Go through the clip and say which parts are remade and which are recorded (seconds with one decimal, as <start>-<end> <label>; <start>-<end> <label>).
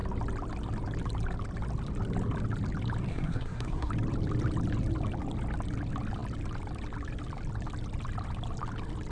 0.0-3.1 recorded; 3.1-3.9 remade; 3.9-9.1 recorded